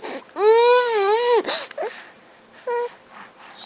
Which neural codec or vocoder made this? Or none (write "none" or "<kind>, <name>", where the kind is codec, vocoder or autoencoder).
none